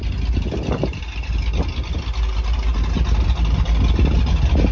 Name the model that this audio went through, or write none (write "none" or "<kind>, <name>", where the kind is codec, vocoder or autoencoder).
none